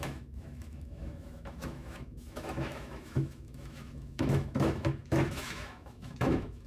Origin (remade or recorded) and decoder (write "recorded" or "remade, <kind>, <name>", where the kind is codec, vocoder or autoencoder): remade, autoencoder, DAC-VAE